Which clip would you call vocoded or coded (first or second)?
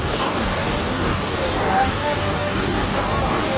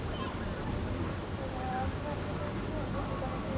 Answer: first